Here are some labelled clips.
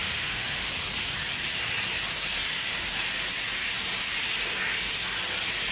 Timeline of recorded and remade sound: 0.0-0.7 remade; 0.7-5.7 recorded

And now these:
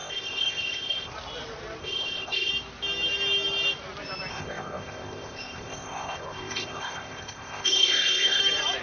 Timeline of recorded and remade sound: 0.0-1.1 remade; 1.1-1.8 recorded; 1.8-2.5 remade; 2.5-4.3 recorded; 4.3-8.4 remade; 8.4-8.8 recorded

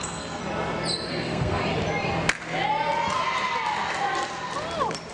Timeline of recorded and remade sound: 0.0-0.4 remade; 0.4-1.1 recorded; 1.1-1.6 remade; 1.6-5.1 recorded